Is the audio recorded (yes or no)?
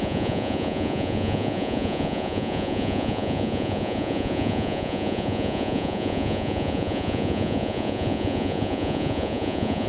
no